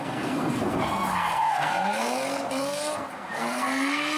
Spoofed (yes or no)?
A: yes